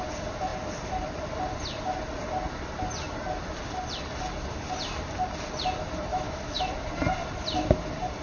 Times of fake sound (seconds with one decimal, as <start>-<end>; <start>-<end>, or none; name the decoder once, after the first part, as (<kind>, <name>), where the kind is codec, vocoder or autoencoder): 6.1-6.7 (autoencoder, DAC-VAE)